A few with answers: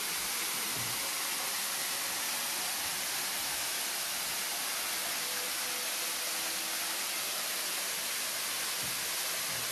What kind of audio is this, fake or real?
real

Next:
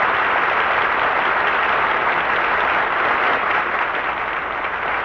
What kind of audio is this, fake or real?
real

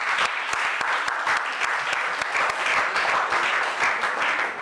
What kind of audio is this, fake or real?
real